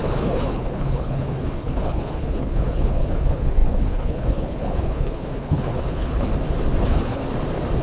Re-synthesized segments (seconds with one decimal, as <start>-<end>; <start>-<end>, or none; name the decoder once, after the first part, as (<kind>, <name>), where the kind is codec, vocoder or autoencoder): 0.0-6.3 (codec, HILCodec); 6.8-7.2